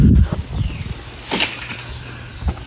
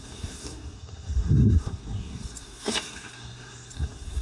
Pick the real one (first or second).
first